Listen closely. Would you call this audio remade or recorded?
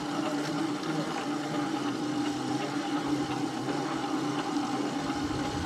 recorded